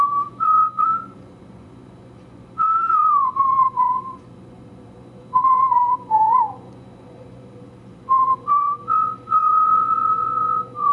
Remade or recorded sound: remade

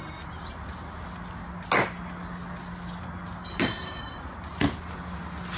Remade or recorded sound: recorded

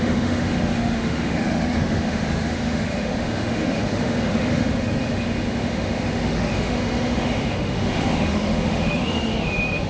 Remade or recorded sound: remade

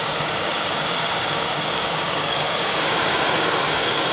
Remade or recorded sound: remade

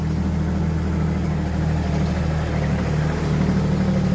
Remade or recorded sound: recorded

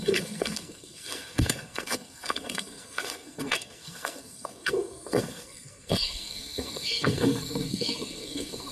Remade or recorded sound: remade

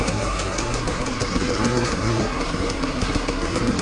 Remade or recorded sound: remade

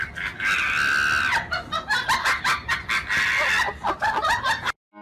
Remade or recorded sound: recorded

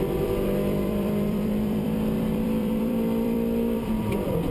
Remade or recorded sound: remade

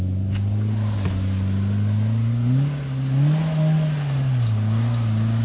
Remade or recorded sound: recorded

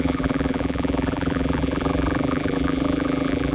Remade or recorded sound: remade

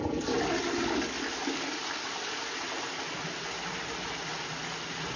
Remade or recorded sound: recorded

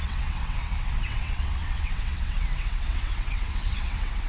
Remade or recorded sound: remade